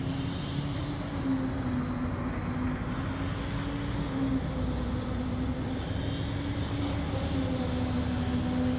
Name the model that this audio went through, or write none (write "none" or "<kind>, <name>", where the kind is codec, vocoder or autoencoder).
none